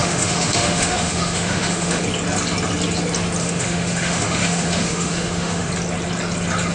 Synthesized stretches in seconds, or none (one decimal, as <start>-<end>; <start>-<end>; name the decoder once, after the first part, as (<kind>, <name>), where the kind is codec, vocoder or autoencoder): 0.0-2.0 (autoencoder, DAC-VAE); 3.4-5.7